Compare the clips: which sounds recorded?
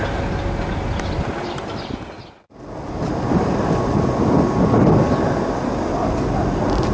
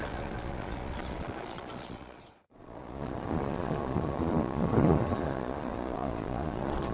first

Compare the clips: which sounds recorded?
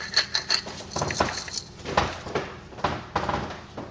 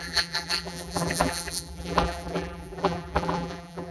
first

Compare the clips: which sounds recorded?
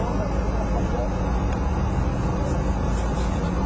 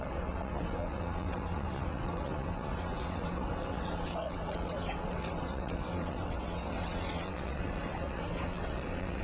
first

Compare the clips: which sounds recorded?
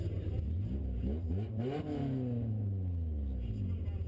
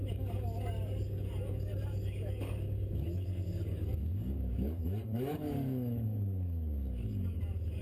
first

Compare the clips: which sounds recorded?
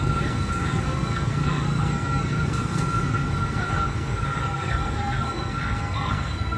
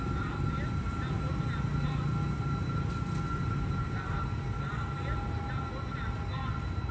second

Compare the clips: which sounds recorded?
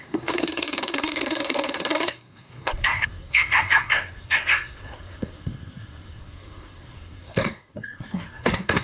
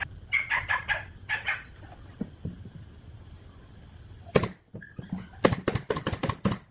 second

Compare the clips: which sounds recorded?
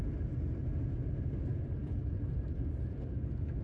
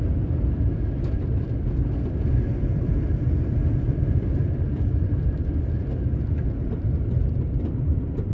first